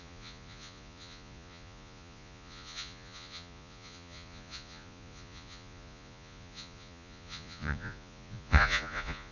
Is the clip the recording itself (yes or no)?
no